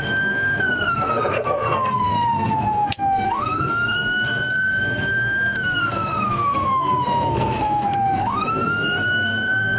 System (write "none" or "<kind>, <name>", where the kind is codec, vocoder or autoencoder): codec, SNAC